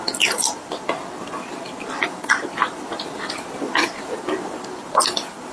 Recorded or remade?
remade